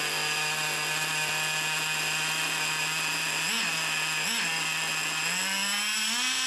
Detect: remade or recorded recorded